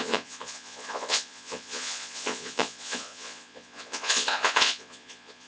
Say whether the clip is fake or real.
fake